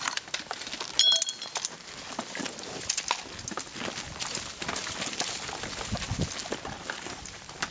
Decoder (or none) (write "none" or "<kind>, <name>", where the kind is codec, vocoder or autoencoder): none